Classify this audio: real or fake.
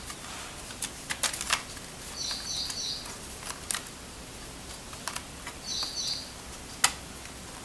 real